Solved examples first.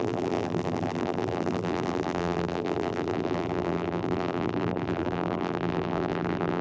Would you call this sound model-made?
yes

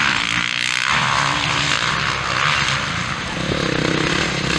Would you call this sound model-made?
no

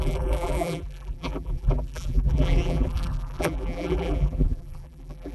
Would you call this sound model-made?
yes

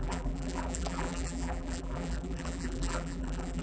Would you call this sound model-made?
yes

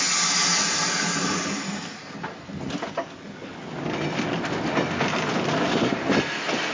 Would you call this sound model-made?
no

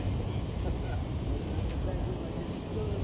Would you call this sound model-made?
no